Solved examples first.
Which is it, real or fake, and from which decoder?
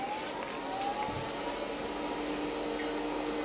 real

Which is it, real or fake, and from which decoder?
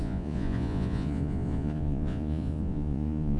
fake, vocoder, Vocos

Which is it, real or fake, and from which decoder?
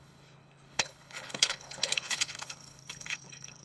fake, codec, HILCodec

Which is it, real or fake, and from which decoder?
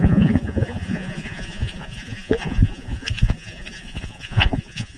fake, vocoder, Vocos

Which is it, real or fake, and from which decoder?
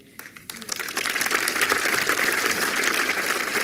fake, vocoder, BigVGAN v2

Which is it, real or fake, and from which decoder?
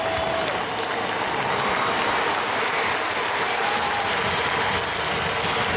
real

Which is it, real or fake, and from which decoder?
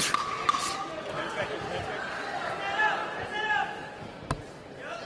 real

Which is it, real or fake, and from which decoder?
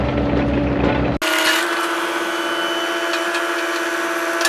real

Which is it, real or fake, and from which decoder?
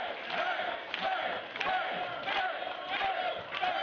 real